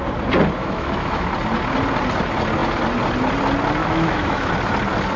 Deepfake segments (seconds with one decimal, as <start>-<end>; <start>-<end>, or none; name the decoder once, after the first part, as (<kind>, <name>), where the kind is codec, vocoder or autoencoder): 0.6-1.3 (autoencoder, DAC-VAE); 3.8-4.5

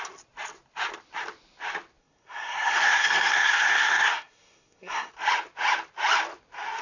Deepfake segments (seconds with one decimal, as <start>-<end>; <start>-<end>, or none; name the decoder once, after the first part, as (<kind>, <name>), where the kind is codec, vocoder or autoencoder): 2.0-5.1 (codec, SNAC)

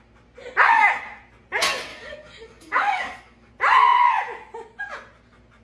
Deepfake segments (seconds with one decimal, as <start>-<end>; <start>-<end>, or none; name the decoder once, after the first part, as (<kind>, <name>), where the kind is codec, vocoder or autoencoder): 1.9-3.5 (codec, DAC)

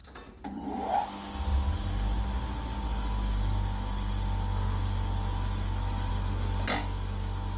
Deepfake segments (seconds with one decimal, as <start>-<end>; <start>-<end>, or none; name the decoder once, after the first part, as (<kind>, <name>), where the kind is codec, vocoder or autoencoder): 0.0-0.6 (vocoder, BigVGAN v2)